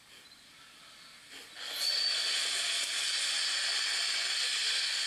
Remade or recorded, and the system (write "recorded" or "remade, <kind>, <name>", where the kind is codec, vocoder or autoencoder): recorded